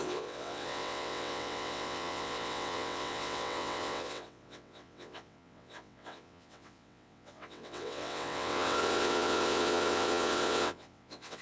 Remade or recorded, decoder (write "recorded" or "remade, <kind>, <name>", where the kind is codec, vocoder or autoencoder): remade, vocoder, WaveNeXt